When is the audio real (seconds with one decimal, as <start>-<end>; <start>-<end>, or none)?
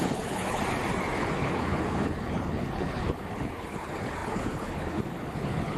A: 0.6-1.2